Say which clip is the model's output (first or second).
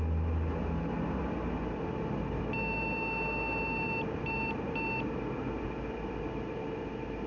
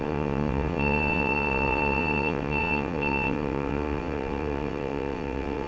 second